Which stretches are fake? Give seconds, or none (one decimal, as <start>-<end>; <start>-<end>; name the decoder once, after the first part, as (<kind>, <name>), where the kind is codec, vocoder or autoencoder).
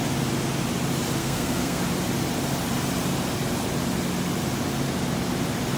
1.2-1.8 (codec, SNAC)